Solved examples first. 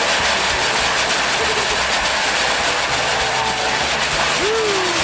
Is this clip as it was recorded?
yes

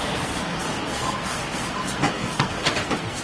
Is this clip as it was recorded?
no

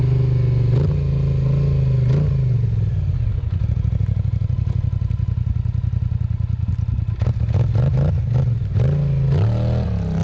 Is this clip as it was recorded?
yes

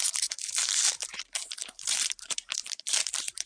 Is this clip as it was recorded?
no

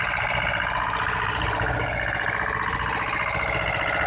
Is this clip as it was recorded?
yes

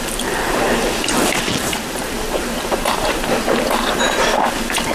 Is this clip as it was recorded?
no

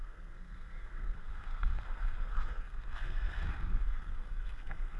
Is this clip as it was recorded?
no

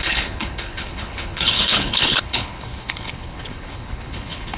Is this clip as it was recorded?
no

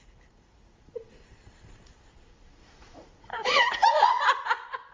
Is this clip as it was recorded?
no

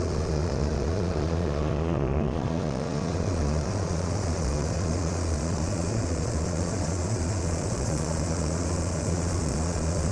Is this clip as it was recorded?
no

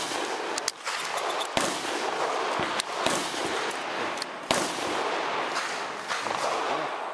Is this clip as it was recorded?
yes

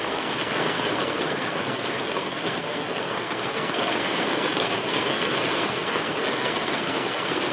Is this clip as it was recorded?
no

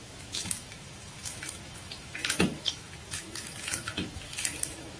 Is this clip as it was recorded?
no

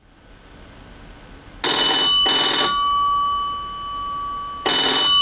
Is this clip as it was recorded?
yes